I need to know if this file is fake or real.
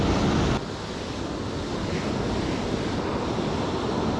real